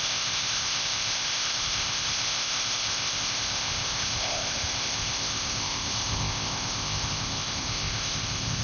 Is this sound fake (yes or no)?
yes